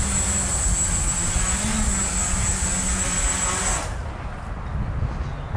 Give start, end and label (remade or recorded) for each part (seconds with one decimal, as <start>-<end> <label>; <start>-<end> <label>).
0.0-5.6 recorded